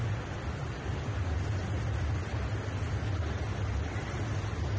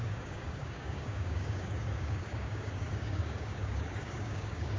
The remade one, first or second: second